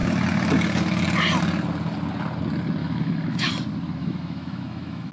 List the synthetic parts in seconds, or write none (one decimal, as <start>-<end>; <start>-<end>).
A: 2.8-3.5; 4.0-5.1